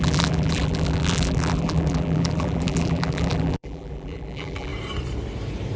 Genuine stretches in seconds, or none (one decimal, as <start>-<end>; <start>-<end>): 4.7-5.8